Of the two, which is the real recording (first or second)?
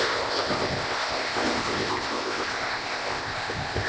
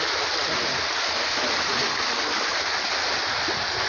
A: second